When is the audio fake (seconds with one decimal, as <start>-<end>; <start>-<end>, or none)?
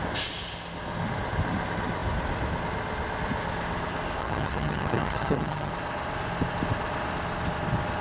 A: 4.2-5.7